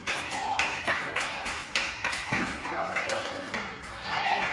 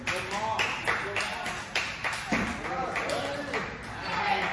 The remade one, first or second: first